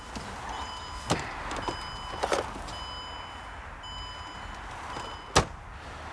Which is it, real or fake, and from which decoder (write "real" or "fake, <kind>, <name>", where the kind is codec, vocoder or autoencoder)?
real